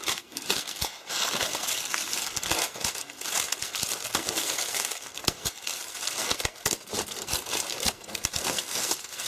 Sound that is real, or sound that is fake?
fake